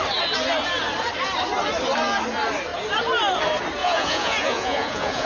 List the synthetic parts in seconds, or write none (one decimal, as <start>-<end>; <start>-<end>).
3.8-5.3